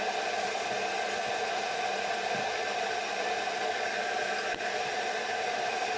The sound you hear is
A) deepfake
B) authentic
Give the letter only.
B